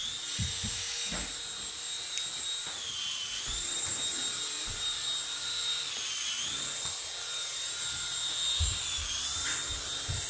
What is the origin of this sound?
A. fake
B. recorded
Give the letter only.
B